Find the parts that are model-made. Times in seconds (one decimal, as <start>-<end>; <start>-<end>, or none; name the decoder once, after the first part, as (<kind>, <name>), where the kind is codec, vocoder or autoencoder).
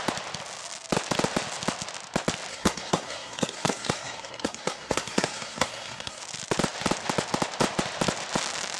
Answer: 2.5-6.2 (codec, SNAC)